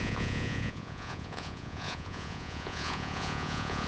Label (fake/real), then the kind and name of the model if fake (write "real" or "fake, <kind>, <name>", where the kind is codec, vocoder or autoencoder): fake, vocoder, Vocos